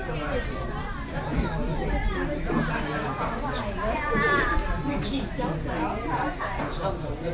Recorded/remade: recorded